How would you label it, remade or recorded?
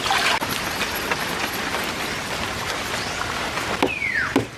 recorded